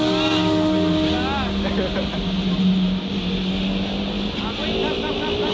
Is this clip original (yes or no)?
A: yes